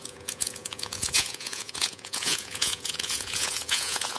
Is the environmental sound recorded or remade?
remade